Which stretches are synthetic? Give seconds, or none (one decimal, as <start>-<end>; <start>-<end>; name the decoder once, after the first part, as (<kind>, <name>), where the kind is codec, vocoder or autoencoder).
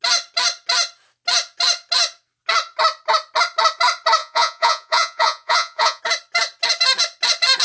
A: 4.2-6.0 (vocoder, Vocos)